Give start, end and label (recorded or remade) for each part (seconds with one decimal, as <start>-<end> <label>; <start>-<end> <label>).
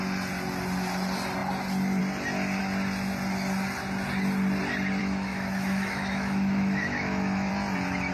0.0-5.0 recorded; 5.0-7.5 remade; 7.5-8.1 recorded